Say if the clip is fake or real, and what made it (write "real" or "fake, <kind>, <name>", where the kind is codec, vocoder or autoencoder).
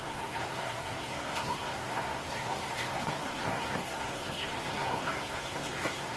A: fake, codec, SNAC